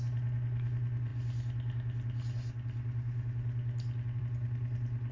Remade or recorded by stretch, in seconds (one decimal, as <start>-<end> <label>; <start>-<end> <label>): 0.0-5.1 recorded